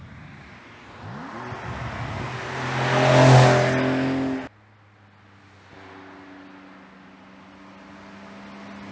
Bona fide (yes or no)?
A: yes